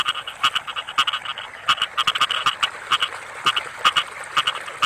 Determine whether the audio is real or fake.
real